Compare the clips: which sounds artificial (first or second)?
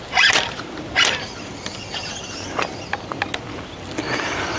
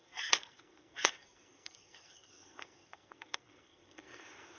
second